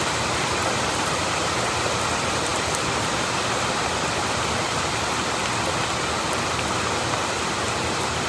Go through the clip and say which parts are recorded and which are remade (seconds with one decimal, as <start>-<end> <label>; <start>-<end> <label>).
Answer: 0.0-8.3 recorded